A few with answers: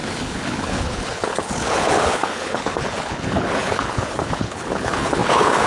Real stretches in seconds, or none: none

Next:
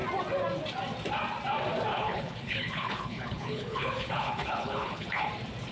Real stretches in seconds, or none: 0.0-1.9; 5.3-5.7